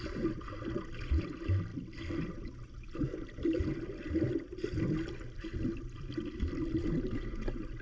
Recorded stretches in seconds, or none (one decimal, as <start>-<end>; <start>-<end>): 0.0-7.8